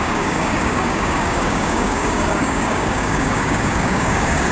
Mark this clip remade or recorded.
remade